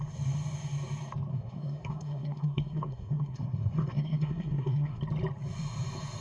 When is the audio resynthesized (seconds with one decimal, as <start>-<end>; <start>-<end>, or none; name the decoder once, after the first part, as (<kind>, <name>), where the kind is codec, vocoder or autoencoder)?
1.3-5.0 (codec, SNAC)